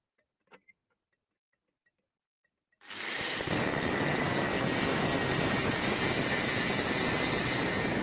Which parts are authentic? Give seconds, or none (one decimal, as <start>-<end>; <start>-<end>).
0.0-8.0